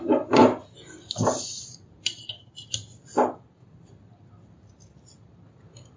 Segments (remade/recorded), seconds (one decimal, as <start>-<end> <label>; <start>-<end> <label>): 0.0-6.0 recorded